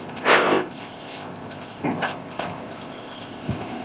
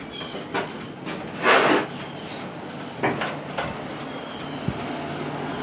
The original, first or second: second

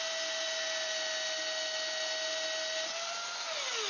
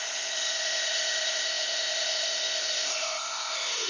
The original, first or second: first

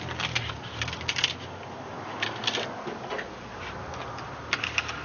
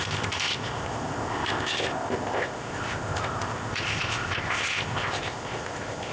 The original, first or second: first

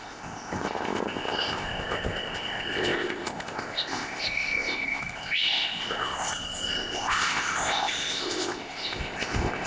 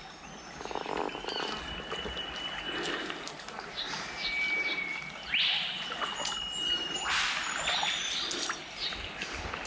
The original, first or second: second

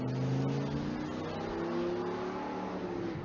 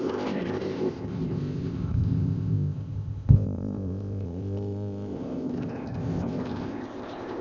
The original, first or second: first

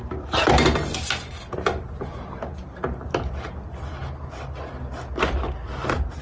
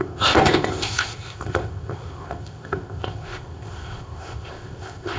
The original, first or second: first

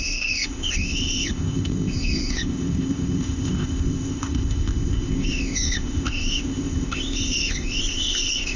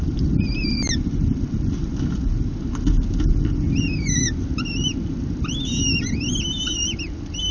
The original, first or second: second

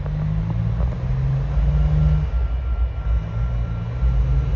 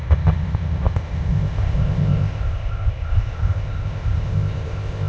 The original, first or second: first